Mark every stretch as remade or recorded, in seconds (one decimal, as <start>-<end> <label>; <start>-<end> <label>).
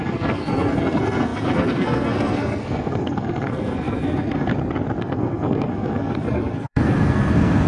0.0-4.5 remade; 4.5-5.0 recorded; 5.0-7.7 remade